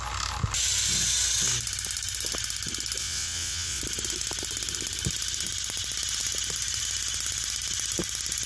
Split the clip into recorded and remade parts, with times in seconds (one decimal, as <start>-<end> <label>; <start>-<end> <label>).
0.0-3.0 recorded; 3.0-3.8 remade; 3.8-8.5 recorded